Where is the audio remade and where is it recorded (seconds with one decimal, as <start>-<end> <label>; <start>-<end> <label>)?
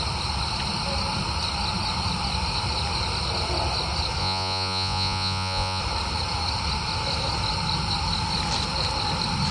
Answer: 0.0-4.2 recorded; 4.2-5.8 remade; 5.8-9.5 recorded